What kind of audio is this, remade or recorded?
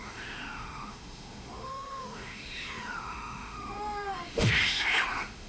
remade